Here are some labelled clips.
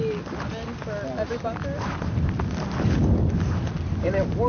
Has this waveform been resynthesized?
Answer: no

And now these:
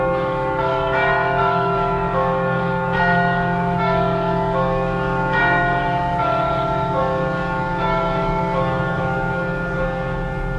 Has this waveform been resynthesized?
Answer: yes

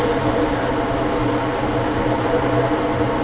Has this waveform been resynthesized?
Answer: no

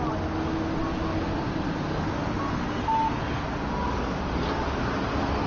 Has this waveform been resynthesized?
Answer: no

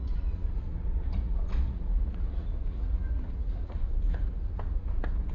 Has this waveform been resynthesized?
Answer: yes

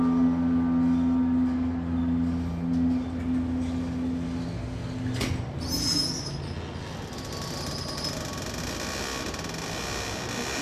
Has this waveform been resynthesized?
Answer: no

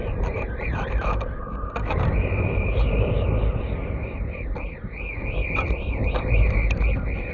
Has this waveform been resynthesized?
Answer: yes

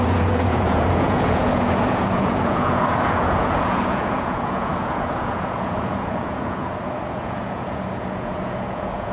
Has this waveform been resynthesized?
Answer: yes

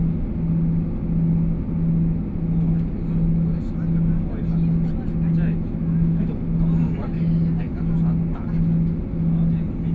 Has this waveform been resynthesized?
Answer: no